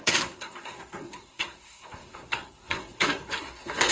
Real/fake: fake